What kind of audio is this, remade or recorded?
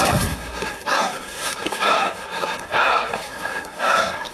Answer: remade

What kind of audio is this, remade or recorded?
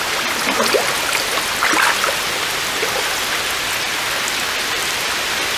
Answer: recorded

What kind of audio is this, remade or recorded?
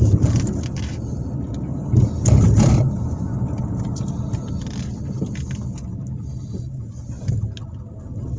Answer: recorded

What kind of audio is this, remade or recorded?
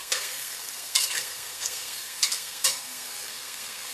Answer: remade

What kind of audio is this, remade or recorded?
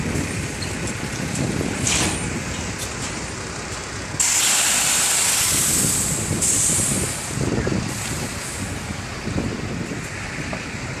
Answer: recorded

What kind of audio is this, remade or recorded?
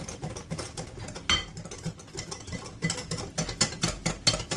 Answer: recorded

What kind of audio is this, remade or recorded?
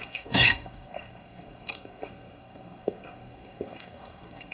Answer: remade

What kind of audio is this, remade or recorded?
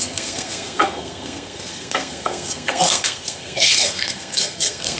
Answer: remade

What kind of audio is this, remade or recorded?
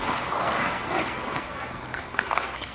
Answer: remade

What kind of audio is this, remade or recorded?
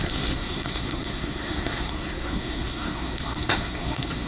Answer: remade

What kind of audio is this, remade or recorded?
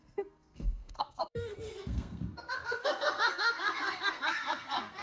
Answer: remade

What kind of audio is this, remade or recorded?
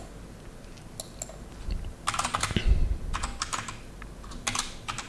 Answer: recorded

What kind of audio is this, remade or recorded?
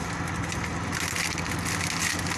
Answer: recorded